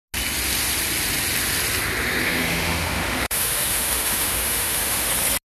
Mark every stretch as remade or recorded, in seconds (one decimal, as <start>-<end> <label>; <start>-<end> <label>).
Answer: 0.0-2.2 recorded; 2.2-5.1 remade; 5.1-5.5 recorded

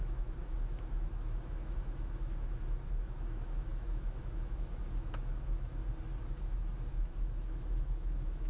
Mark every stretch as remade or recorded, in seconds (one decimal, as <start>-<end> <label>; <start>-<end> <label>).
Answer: 0.0-5.8 remade; 5.8-6.3 recorded; 6.3-8.5 remade

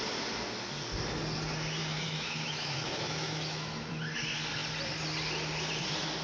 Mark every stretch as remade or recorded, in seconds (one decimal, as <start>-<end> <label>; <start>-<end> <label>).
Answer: 0.0-1.8 recorded; 1.8-3.9 remade; 3.9-6.2 recorded

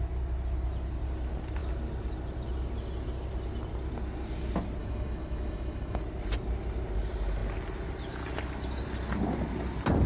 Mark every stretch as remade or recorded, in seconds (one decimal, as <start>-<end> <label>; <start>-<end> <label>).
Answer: 0.0-4.8 recorded; 4.8-6.0 remade; 6.0-10.1 recorded

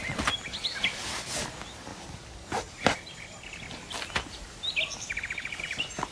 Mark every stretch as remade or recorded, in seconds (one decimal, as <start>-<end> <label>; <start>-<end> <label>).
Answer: 0.0-6.1 recorded

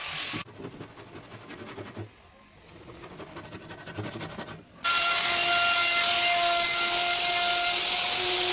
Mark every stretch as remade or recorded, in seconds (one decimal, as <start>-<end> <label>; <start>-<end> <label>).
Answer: 0.0-8.5 recorded

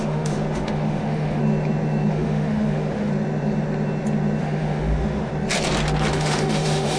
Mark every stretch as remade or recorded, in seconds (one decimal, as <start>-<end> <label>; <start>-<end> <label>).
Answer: 0.0-1.4 remade; 1.4-2.1 recorded; 2.1-3.1 remade; 3.1-4.4 recorded; 4.4-5.3 remade; 5.3-6.1 recorded; 6.1-7.0 remade

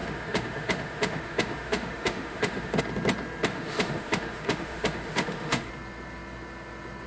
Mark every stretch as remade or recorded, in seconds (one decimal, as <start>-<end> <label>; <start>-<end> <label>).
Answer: 0.0-2.8 remade; 2.8-3.5 recorded; 3.5-5.7 remade; 5.7-7.1 recorded